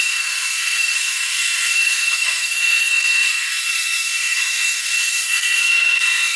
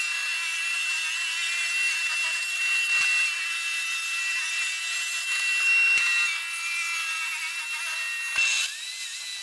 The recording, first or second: second